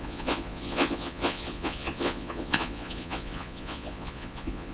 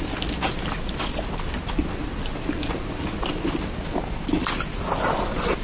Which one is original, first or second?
second